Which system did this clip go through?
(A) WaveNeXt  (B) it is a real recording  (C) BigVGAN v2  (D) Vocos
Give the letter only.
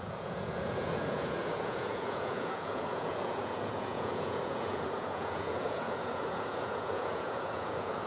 D